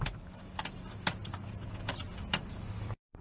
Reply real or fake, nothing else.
fake